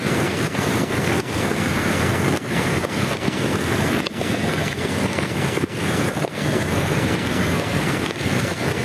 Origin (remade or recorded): remade